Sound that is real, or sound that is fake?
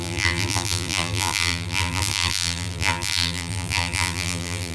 fake